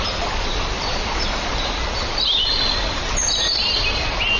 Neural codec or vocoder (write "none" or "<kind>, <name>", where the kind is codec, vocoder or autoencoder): none